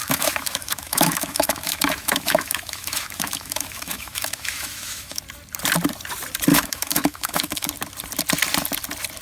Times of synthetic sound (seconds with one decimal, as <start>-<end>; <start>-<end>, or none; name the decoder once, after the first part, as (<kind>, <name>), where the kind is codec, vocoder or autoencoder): 0.0-5.2 (autoencoder, DAC-VAE); 6.5-7.7